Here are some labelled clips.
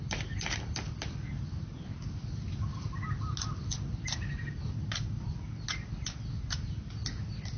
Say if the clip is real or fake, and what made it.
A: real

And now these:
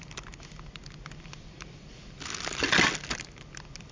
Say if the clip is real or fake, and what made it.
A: real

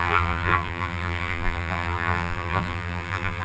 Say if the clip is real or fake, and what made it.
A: fake, vocoder, BigVGAN v2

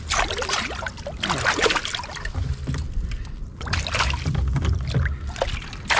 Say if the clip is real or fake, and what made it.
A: real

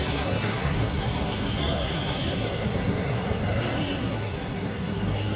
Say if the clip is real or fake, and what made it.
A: fake, codec, SNAC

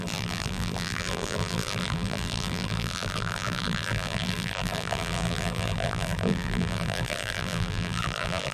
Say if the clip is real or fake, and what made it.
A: fake, vocoder, BigVGAN v2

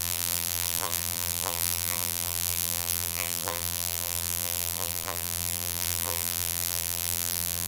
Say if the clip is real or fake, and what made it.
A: fake, vocoder, BigVGAN v2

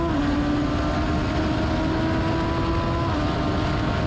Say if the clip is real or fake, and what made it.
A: real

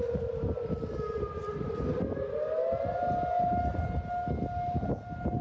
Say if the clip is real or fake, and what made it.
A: real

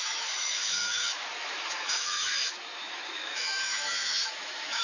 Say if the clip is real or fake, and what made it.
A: fake, autoencoder, DAC-VAE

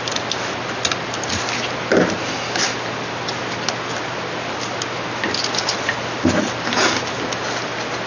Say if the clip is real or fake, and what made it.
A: real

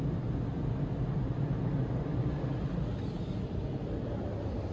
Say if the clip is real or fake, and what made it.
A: real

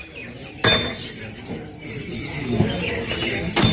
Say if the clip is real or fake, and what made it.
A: real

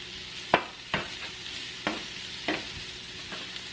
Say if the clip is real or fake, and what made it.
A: real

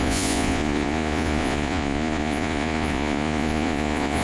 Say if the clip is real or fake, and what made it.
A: fake, vocoder, Vocos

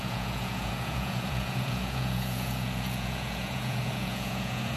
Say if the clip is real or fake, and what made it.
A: fake, vocoder, Vocos